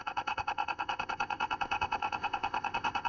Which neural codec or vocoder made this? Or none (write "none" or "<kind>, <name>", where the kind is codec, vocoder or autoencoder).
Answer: codec, ZipCodec